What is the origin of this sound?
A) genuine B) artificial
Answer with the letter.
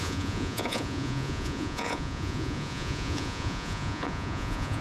B